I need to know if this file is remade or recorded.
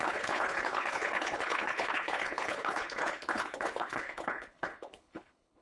remade